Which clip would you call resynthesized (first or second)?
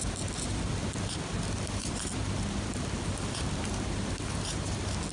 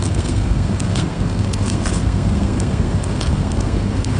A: second